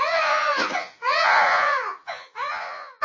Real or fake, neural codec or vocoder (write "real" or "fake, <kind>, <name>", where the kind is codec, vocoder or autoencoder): fake, vocoder, Vocos